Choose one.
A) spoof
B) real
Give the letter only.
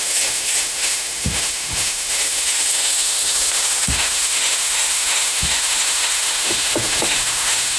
A